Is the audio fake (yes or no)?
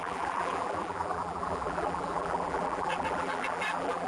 yes